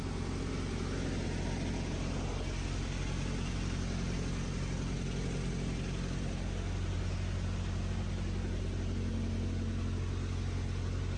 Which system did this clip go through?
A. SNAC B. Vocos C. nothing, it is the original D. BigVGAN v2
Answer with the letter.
C